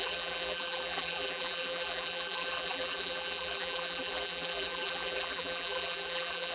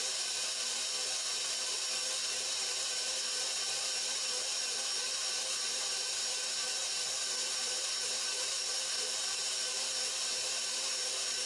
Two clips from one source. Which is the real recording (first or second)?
second